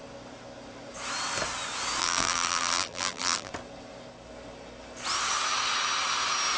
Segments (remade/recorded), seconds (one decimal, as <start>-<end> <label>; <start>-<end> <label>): 0.0-2.0 recorded; 2.0-3.5 remade; 3.5-6.6 recorded